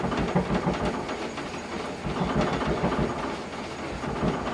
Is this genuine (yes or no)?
yes